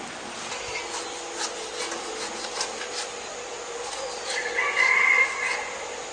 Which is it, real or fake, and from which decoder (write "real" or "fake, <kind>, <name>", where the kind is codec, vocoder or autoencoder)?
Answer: real